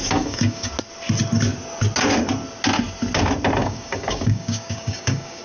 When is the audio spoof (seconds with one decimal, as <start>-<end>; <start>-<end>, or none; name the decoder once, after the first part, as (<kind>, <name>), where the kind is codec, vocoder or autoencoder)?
0.0-0.7 (codec, DAC); 3.6-5.4